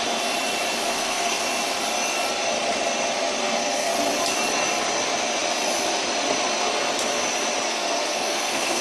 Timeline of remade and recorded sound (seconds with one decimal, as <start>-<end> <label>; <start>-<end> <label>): 0.0-0.8 recorded; 0.8-1.4 remade; 1.4-3.4 recorded; 3.4-3.9 remade; 3.9-7.7 recorded; 7.7-8.8 remade